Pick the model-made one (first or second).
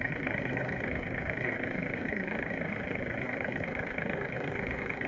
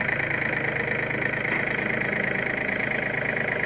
first